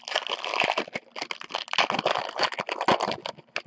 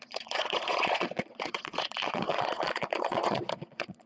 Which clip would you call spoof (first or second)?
second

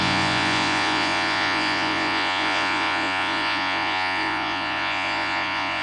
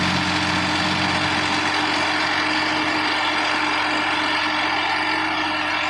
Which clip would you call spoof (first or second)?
first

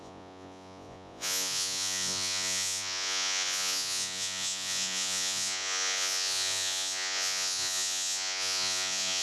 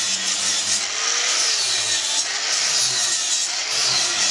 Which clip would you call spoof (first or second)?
first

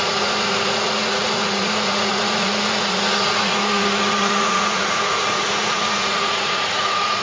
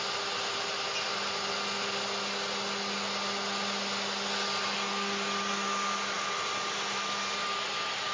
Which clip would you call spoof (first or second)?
first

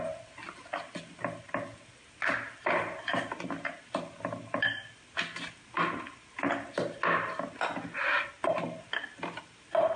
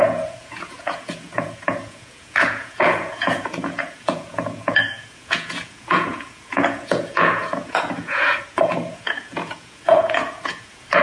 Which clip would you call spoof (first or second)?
second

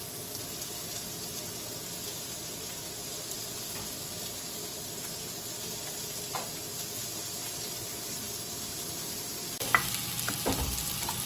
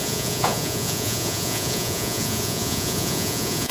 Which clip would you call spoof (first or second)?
second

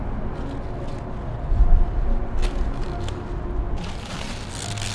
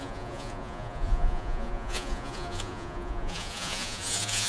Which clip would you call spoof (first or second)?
second